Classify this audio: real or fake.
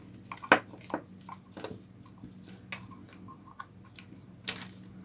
real